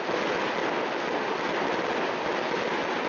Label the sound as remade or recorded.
recorded